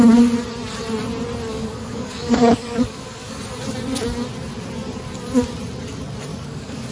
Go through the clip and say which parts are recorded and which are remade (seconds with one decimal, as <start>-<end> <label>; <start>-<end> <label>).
0.0-1.5 recorded; 1.5-3.4 remade; 3.4-6.3 recorded; 6.3-6.9 remade